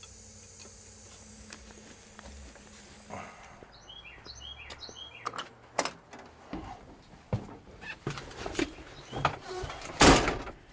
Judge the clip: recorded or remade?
recorded